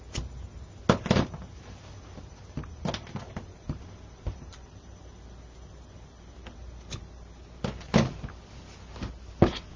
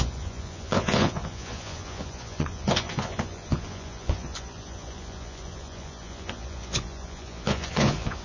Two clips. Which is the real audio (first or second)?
first